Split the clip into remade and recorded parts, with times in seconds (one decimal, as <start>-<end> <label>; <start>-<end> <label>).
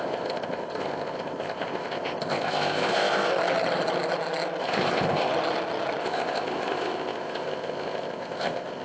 0.0-3.3 remade; 3.3-4.6 recorded; 4.6-5.3 remade; 5.3-6.0 recorded; 6.0-8.8 remade